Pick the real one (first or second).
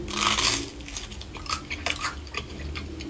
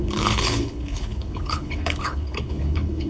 first